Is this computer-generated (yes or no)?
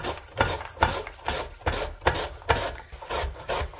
no